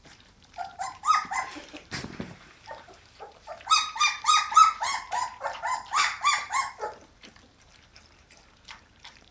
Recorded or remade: remade